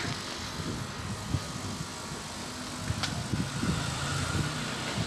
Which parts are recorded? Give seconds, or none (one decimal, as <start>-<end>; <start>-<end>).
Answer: 0.0-5.1